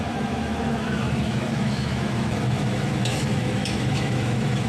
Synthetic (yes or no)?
yes